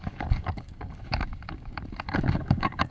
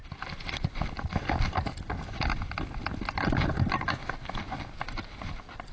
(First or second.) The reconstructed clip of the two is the first